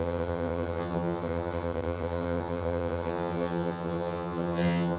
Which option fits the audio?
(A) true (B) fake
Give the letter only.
B